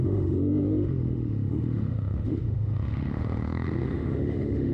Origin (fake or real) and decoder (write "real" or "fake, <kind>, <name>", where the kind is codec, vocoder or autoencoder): fake, autoencoder, DAC-VAE